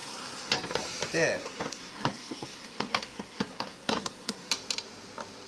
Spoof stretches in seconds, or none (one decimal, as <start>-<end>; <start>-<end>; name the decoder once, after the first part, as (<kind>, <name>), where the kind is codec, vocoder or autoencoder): 0.0-0.5 (codec, SNAC); 1.4-4.5